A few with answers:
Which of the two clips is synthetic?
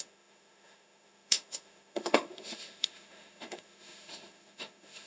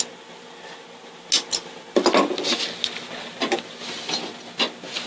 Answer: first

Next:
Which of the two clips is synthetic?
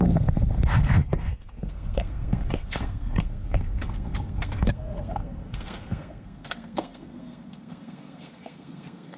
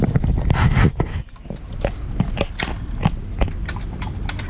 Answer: first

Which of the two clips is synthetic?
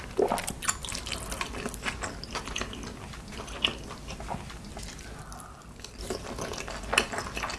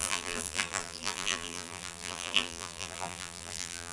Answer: second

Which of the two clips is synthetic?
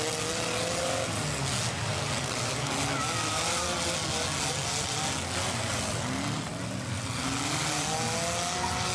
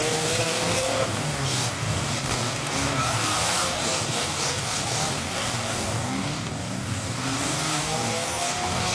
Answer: second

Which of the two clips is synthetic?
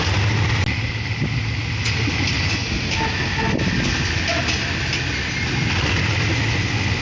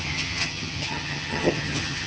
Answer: second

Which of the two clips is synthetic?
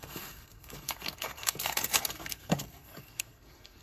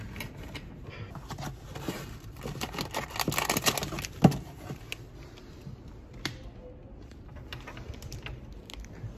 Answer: first